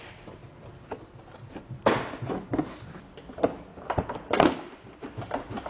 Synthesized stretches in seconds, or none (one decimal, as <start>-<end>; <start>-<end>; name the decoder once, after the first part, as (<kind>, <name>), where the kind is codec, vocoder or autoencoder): 3.7-4.5 (vocoder, BigVGAN v2)